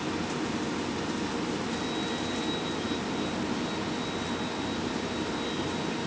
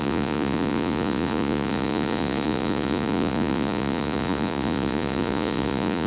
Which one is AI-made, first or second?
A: second